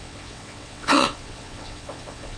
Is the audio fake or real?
fake